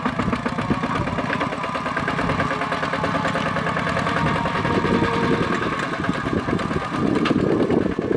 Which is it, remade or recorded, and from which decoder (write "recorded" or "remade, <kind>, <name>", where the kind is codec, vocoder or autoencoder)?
recorded